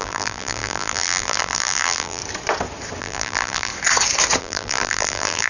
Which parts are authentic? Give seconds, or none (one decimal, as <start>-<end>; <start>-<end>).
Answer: 2.2-3.0; 3.7-4.4